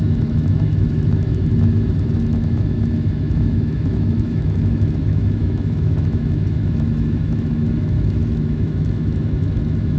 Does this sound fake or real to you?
fake